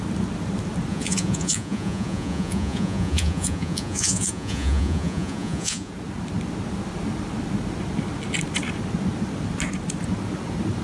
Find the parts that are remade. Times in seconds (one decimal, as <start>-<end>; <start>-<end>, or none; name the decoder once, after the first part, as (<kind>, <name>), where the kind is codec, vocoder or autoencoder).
0.9-5.9 (vocoder, Vocos)